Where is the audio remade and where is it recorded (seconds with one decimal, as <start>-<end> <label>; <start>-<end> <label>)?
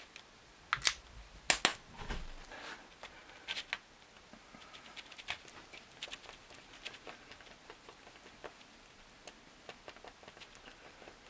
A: 0.0-11.3 recorded